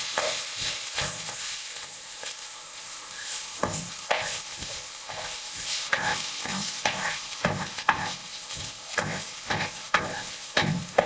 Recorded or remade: remade